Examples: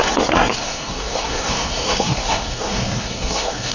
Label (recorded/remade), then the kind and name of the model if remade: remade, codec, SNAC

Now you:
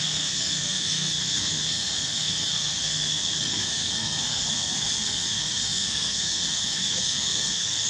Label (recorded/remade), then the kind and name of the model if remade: remade, codec, SNAC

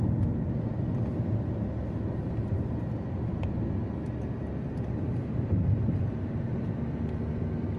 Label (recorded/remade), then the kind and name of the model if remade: recorded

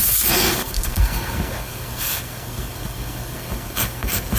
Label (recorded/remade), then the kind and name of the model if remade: remade, codec, SNAC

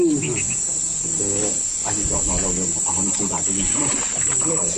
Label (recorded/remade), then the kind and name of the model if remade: recorded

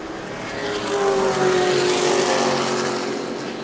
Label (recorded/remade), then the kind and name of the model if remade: recorded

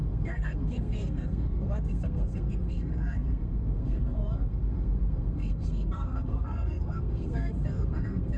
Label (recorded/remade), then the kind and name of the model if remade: remade, codec, SNAC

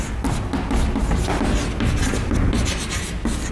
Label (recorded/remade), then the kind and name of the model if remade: recorded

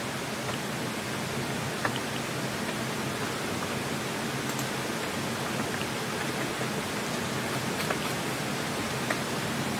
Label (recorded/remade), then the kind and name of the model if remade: recorded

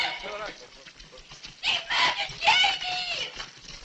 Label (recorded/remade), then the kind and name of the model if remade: recorded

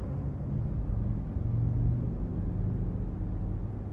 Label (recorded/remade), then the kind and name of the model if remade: recorded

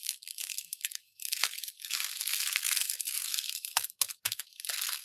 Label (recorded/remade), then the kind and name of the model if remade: remade, codec, SNAC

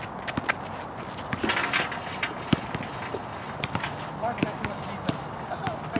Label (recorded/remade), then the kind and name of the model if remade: recorded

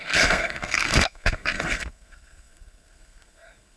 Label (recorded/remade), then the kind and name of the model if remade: remade, codec, SNAC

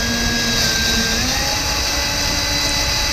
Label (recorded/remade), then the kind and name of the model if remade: recorded